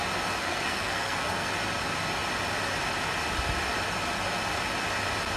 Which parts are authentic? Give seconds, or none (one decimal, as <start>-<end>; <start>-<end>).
0.0-0.4; 1.5-5.4